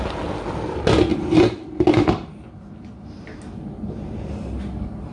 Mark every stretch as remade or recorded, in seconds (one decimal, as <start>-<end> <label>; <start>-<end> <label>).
0.0-5.1 recorded